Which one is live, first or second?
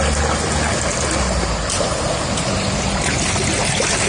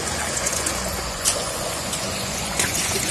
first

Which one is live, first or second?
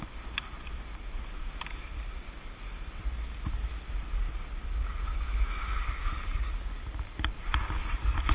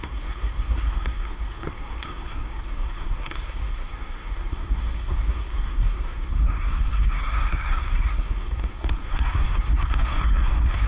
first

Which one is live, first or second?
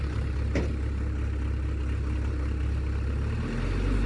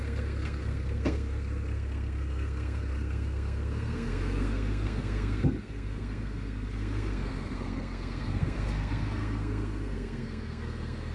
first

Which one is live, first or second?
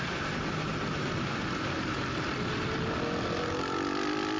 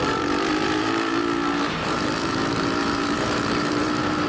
first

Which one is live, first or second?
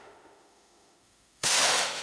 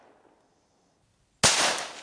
second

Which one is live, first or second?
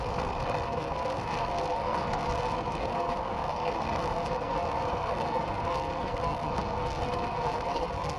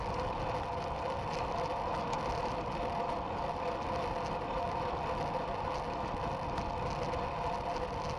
second